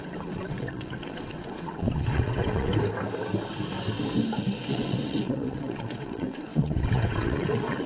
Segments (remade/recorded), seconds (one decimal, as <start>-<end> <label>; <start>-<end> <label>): 0.0-2.7 remade; 2.7-4.4 recorded; 4.4-7.9 remade